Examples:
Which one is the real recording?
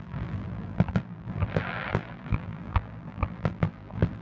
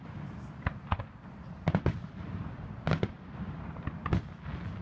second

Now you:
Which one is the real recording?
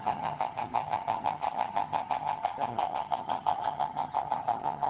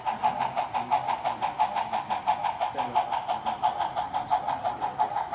second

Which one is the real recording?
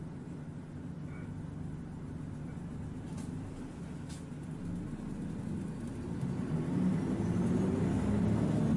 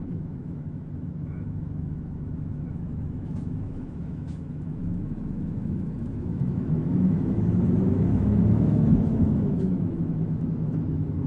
first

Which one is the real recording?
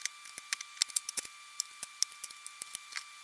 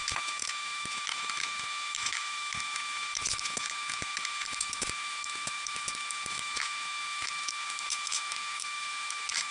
first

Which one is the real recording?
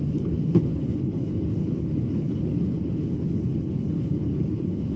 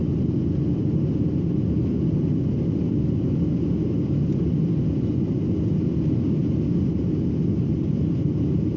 second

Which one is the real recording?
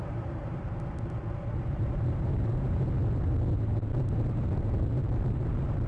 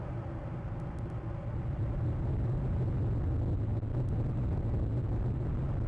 second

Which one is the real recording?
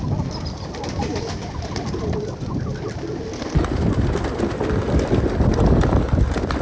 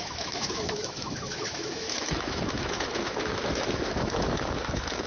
first